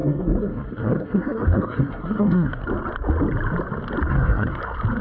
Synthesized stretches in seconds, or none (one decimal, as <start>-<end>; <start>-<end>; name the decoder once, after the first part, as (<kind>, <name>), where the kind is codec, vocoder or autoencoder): 0.0-2.6 (codec, SNAC); 4.1-4.6